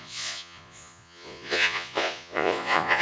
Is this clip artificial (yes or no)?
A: yes